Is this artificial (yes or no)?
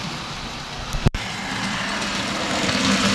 yes